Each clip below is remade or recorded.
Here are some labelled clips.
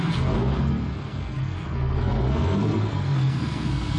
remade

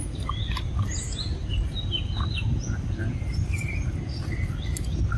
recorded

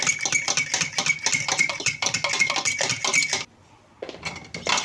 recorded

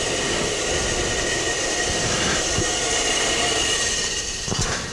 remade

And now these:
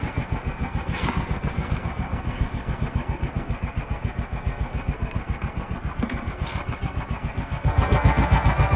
remade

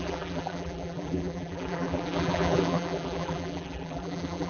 remade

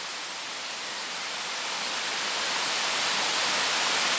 recorded